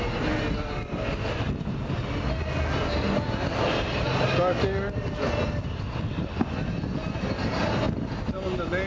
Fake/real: real